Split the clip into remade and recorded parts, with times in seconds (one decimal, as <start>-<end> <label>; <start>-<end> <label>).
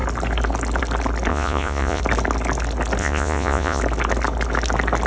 0.0-1.3 recorded; 1.3-2.0 remade; 2.0-3.0 recorded; 3.0-3.8 remade; 3.8-5.1 recorded